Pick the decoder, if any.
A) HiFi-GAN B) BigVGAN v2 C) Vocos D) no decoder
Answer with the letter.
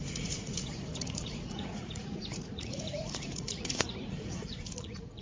C